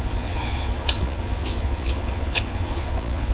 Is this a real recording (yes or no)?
no